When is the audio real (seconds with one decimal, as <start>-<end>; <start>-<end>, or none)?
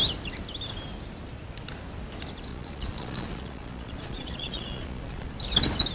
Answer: 0.0-2.5; 5.3-5.9